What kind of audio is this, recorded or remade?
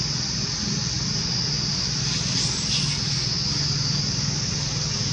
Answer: recorded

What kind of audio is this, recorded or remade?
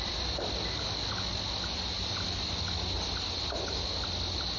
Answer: recorded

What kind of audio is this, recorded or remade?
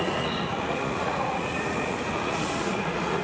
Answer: remade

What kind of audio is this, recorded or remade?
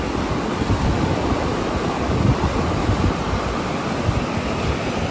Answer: recorded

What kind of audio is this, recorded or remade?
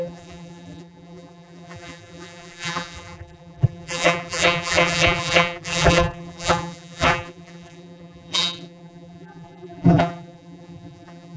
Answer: remade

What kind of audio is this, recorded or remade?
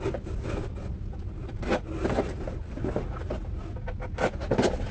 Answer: recorded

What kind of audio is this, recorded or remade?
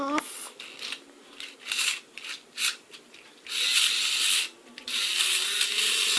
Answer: recorded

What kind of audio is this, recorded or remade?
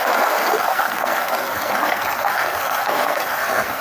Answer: remade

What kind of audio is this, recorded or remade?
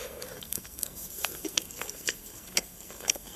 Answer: remade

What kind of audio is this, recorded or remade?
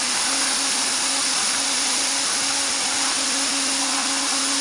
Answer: recorded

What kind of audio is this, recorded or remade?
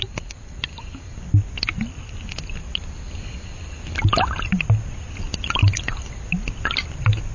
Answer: recorded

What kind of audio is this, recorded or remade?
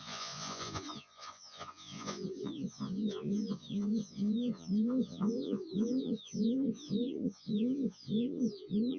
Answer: remade